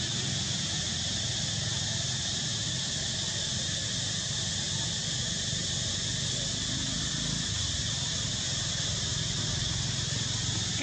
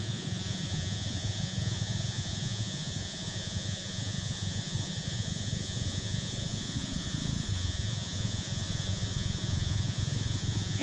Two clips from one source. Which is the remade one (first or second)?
second